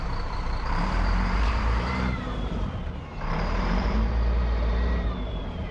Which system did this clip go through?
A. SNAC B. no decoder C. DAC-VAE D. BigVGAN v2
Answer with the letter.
D